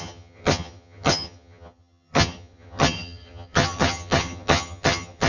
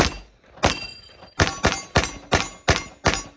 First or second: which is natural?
second